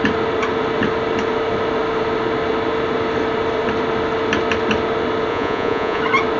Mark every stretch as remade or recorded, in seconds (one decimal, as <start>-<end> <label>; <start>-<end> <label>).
0.0-5.3 recorded; 5.3-6.0 remade; 6.0-6.4 recorded